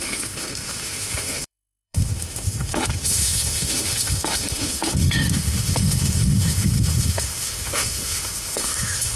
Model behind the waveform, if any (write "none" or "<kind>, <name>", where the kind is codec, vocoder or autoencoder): autoencoder, DAC-VAE